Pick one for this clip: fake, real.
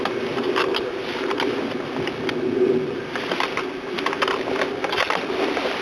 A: real